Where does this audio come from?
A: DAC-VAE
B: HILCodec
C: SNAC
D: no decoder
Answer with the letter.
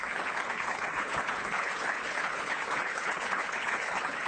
B